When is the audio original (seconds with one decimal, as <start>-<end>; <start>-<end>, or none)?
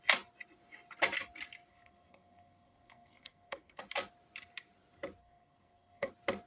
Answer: 0.0-1.7; 3.8-5.2; 6.1-6.5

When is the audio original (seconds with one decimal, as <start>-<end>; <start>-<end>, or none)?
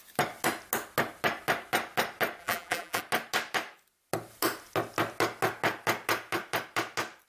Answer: 0.0-2.4; 3.0-7.3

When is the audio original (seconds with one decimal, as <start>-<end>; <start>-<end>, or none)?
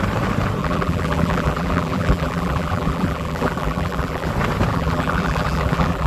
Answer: 0.0-0.6; 4.3-4.7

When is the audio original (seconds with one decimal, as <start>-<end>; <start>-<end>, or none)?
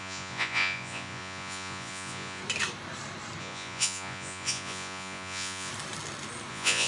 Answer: 2.4-3.4; 5.7-6.5